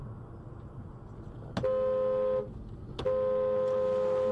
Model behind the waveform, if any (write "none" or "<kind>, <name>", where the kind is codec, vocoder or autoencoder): none